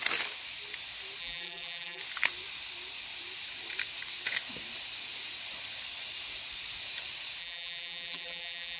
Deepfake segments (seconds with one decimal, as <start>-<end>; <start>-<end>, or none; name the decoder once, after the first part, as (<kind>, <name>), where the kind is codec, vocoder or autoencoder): 1.2-2.0 (vocoder, BigVGAN v2); 7.4-8.8